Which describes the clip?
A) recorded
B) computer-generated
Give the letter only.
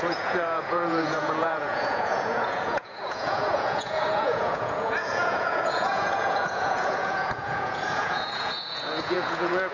B